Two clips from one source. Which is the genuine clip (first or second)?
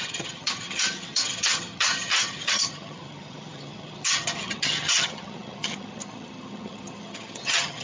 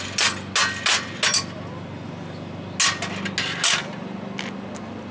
second